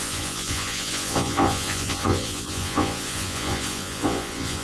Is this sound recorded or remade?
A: remade